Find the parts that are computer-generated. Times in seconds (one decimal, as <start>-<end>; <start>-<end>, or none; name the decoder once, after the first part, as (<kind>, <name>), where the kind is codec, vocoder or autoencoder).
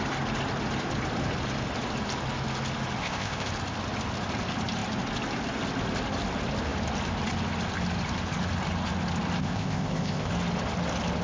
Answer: 3.0-3.5 (codec, ZipCodec); 9.4-10.3